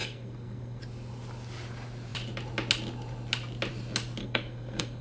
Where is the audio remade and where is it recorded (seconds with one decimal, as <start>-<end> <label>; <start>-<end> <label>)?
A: 0.0-0.8 remade; 0.8-4.2 recorded; 4.2-5.0 remade

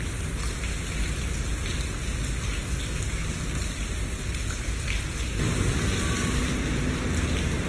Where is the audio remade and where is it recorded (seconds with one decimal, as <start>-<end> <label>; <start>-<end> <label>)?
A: 0.0-7.7 recorded

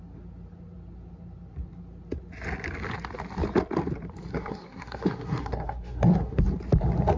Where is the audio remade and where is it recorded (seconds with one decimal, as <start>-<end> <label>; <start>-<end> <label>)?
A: 0.0-4.3 recorded; 4.3-6.4 remade; 6.4-7.2 recorded

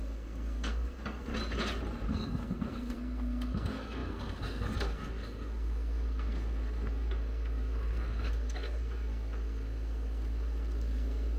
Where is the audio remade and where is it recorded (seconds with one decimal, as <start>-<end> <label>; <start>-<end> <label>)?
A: 0.0-1.3 remade; 1.3-2.1 recorded; 2.1-11.4 remade

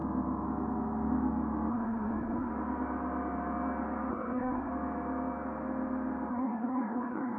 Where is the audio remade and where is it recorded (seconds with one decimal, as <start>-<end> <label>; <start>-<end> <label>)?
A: 0.0-1.7 recorded; 1.7-2.5 remade; 2.5-4.1 recorded; 4.1-4.7 remade; 4.7-6.3 recorded; 6.3-7.4 remade

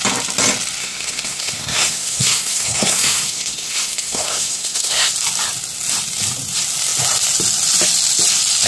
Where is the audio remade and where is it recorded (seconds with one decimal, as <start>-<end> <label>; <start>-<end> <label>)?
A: 0.0-0.8 recorded; 0.8-5.1 remade; 5.1-8.7 recorded

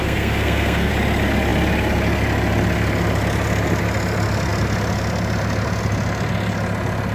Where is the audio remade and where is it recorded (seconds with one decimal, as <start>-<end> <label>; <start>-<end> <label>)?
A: 0.0-0.9 remade; 0.9-7.1 recorded